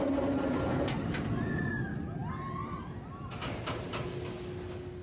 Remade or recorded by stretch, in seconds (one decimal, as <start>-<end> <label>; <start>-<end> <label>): 0.0-5.0 recorded